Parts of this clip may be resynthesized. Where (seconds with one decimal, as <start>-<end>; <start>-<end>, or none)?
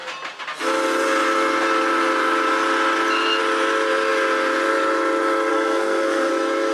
5.5-6.3